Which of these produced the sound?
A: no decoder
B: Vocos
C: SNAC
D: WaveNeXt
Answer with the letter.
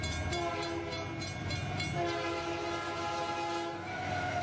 A